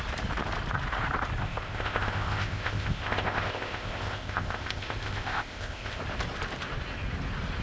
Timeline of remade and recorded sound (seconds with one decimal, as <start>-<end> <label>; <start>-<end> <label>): 0.0-1.4 recorded; 1.4-6.0 remade; 6.0-7.6 recorded